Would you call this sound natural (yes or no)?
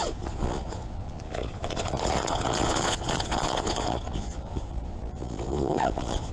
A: no